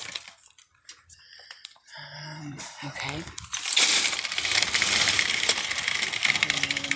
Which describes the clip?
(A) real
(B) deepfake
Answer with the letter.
B